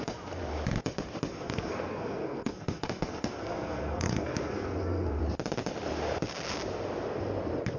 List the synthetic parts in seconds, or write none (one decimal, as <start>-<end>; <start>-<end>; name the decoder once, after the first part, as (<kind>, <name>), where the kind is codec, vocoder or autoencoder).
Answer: 1.3-5.2 (codec, SNAC)